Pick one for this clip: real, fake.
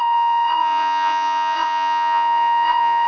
fake